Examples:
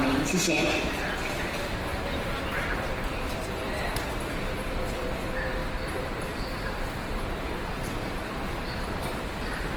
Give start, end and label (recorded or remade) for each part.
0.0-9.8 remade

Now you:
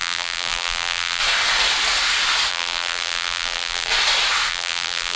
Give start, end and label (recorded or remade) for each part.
0.0-1.2 remade; 1.2-2.5 recorded; 2.5-3.9 remade; 3.9-4.5 recorded; 4.5-5.2 remade

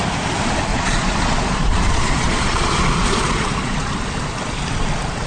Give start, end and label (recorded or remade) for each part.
0.0-0.7 recorded; 0.7-3.9 remade; 3.9-5.3 recorded

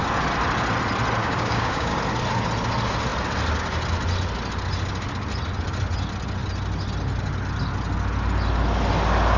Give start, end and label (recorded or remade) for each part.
0.0-1.2 recorded; 1.2-2.0 remade; 2.0-9.4 recorded